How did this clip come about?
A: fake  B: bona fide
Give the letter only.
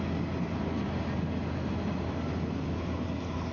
B